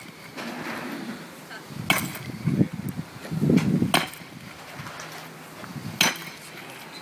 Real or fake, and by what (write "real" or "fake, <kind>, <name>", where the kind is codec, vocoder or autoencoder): real